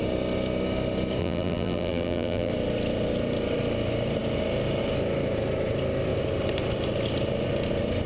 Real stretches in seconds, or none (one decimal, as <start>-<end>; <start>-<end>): 0.0-1.2; 2.5-8.1